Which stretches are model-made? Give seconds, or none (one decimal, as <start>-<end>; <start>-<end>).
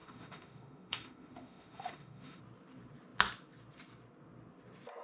0.0-2.4